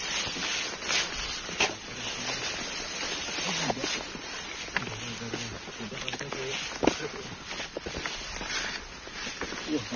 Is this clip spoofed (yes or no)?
no